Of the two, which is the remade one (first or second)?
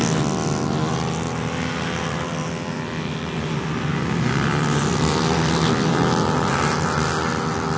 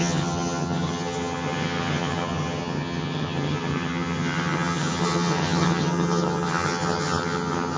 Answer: second